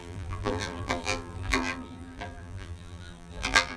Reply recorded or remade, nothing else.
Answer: remade